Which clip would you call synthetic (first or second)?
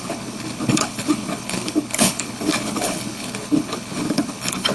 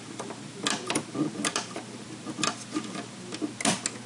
first